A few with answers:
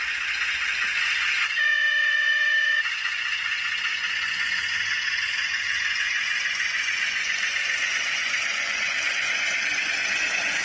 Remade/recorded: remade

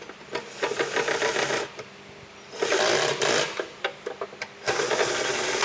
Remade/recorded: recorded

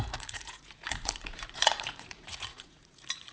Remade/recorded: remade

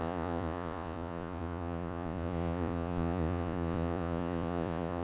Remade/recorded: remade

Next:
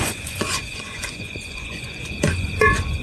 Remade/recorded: remade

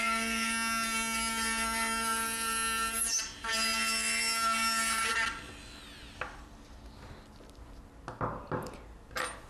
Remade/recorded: recorded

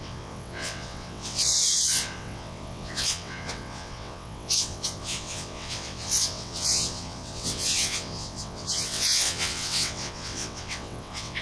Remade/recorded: remade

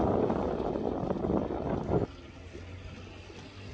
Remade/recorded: recorded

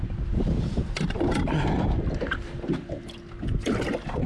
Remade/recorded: recorded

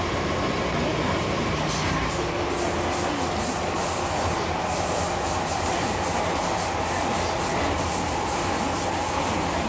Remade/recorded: recorded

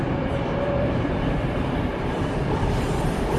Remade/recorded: remade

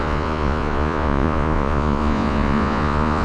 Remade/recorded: remade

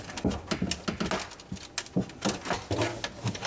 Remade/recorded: recorded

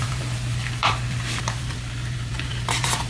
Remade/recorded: remade